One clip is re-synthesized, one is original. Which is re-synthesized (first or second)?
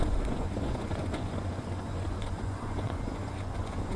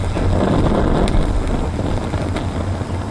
first